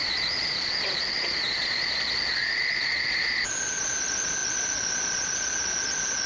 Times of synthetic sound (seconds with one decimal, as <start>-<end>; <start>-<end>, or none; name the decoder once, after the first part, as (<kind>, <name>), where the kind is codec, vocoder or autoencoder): 0.0-6.3 (vocoder, Vocos)